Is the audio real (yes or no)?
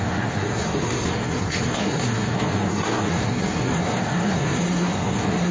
no